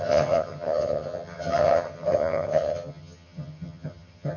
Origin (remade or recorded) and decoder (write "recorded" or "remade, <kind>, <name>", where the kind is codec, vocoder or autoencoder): remade, vocoder, HiFi-GAN